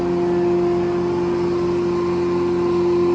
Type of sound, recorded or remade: recorded